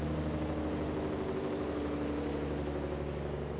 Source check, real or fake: real